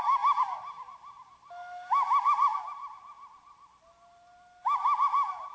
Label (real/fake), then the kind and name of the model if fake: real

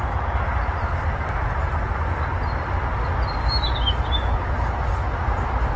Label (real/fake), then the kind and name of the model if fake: real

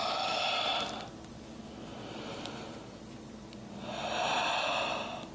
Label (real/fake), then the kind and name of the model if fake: real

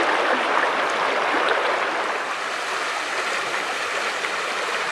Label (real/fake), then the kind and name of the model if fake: real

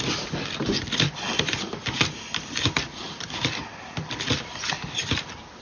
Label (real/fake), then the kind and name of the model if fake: real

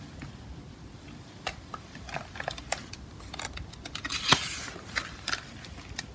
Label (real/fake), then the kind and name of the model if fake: real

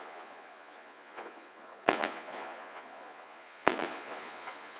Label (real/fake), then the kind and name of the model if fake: fake, vocoder, Vocos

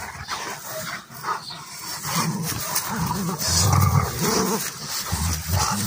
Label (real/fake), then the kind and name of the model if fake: real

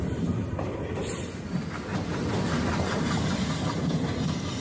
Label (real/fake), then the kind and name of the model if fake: real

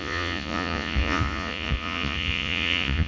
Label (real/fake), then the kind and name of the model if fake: fake, vocoder, Vocos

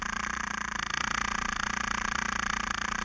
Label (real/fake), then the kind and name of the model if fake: real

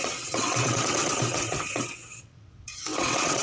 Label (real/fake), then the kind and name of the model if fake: fake, vocoder, WaveNeXt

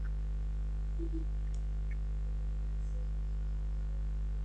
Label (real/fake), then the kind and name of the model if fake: real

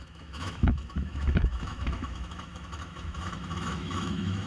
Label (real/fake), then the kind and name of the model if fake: fake, autoencoder, DAC-VAE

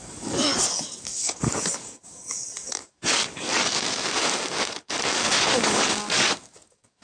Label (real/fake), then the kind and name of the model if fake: fake, codec, DAC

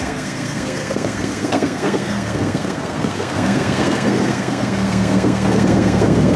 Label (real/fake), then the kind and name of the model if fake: fake, codec, SNAC